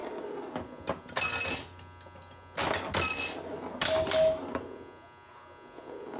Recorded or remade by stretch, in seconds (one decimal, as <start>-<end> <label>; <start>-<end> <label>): 0.0-6.2 recorded